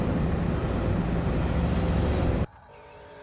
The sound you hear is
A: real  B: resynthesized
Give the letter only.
A